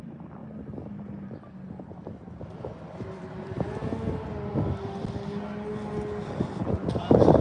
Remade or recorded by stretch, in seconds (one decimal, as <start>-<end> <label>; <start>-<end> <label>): 0.0-0.4 remade; 0.4-2.4 recorded; 2.4-3.8 remade; 3.8-7.4 recorded